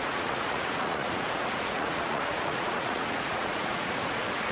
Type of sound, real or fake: fake